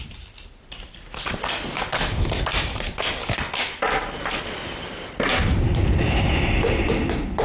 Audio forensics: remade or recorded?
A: recorded